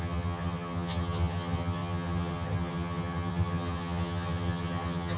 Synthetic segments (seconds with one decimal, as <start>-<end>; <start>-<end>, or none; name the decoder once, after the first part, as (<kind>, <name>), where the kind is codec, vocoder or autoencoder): 0.0-5.2 (vocoder, HiFi-GAN)